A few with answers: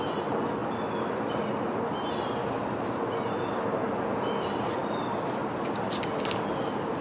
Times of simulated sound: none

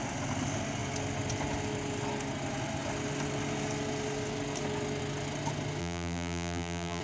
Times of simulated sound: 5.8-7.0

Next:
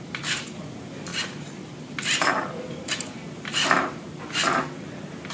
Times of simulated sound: none